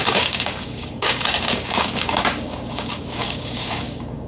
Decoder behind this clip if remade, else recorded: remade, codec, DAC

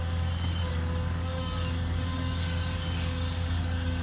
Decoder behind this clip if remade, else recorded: remade, codec, DAC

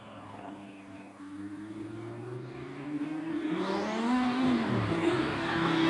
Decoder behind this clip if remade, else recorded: remade, codec, DAC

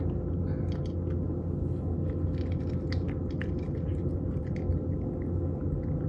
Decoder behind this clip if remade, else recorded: recorded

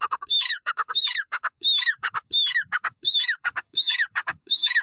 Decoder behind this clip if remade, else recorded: remade, codec, DAC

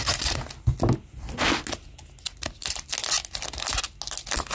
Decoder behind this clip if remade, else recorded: recorded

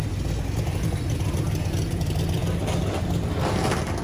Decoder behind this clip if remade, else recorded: recorded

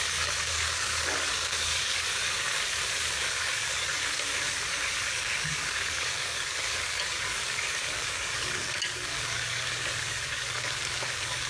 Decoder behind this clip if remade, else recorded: remade, codec, DAC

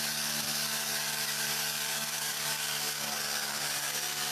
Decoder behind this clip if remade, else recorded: remade, codec, DAC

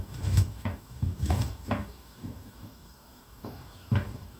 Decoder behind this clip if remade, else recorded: remade, codec, DAC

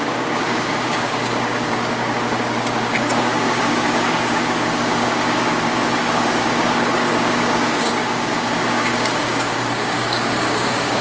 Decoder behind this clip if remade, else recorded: remade, codec, DAC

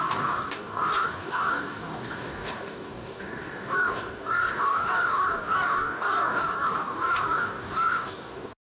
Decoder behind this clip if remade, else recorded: remade, codec, DAC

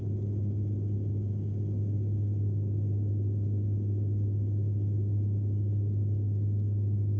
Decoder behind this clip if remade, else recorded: recorded